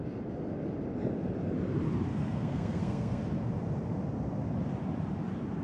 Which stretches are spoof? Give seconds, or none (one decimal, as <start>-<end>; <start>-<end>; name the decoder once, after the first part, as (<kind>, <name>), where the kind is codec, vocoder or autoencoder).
2.1-3.2 (codec, SNAC)

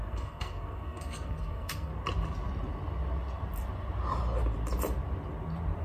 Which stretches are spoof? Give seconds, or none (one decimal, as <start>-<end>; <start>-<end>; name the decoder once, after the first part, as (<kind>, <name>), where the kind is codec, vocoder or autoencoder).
0.0-1.9 (codec, SNAC)

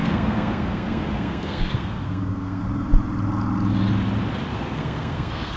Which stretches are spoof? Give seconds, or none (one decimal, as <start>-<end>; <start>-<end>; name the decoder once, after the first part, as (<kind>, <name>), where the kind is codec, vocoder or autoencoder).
0.0-2.6 (codec, SNAC); 4.5-5.6

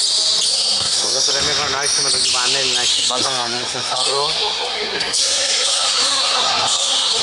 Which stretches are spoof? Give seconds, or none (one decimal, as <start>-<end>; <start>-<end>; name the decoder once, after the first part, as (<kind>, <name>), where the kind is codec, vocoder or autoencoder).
0.5-1.3 (codec, SNAC); 2.9-7.2

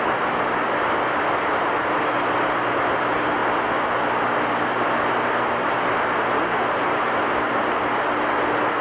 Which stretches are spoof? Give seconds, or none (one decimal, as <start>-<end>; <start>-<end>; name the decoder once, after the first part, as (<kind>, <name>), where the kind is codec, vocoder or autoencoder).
none

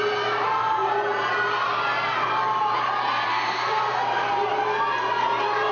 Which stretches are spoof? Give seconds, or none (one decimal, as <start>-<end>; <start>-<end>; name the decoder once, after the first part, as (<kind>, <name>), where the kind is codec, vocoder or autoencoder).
3.3-4.2 (codec, SNAC)

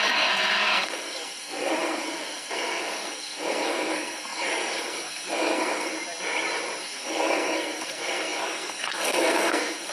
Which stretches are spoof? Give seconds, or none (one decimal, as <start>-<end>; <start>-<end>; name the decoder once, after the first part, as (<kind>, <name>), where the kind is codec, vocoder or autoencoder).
0.0-5.9 (codec, SNAC); 6.8-9.9

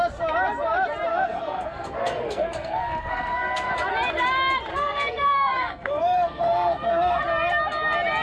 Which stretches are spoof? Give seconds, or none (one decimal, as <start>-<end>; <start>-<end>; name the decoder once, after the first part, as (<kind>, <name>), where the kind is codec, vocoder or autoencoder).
1.1-3.7 (codec, SNAC); 4.7-7.2